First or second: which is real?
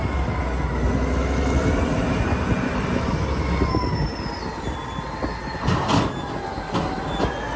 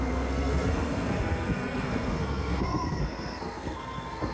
first